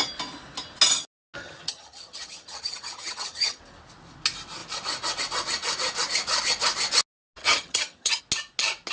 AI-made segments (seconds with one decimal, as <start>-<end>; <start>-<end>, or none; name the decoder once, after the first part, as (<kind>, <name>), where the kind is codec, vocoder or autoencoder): 1.4-3.6 (vocoder, HiFi-GAN); 7.4-8.2